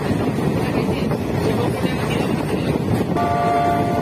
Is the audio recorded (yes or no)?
yes